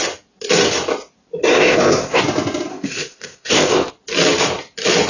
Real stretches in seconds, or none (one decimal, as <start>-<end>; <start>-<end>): 0.0-1.5; 2.2-2.7; 3.9-5.1